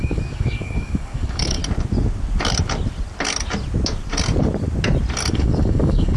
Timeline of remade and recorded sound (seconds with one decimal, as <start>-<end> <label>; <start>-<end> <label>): 0.0-1.6 remade; 1.6-5.3 recorded; 5.3-6.2 remade